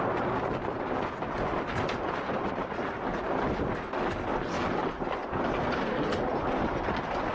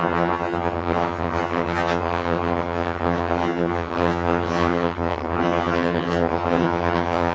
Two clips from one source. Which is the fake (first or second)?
second